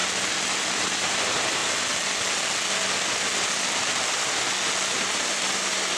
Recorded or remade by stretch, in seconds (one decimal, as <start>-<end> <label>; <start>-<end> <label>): 0.0-0.6 recorded; 0.6-1.6 remade; 1.6-4.9 recorded; 4.9-6.0 remade